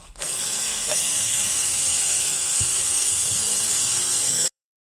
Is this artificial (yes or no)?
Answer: yes